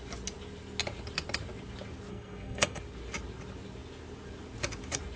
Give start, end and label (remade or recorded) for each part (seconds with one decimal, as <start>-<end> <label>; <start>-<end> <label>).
0.0-2.1 recorded; 2.1-2.8 remade; 2.8-5.2 recorded